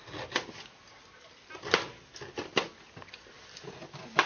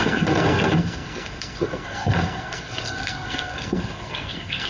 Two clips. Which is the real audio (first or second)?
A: first